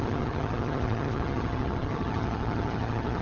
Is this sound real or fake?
fake